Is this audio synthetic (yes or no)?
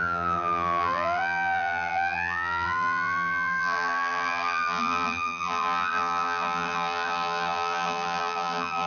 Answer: yes